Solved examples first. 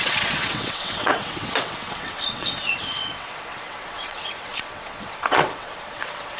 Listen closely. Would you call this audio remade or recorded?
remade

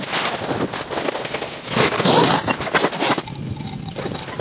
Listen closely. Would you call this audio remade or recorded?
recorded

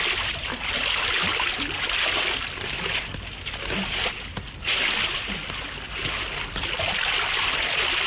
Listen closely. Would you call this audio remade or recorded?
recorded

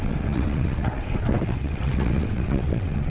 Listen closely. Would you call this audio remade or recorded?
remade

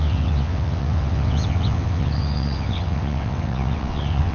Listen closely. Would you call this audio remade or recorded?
remade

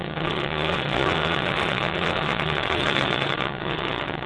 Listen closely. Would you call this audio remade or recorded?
remade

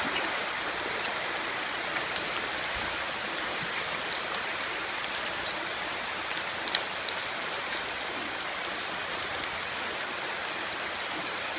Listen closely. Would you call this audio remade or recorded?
recorded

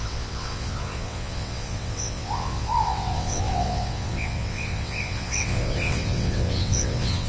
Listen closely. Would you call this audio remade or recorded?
remade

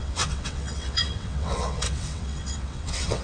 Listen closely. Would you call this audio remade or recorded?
remade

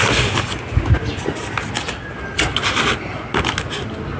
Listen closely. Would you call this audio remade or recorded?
recorded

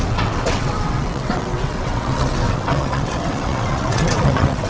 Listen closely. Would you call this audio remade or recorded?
remade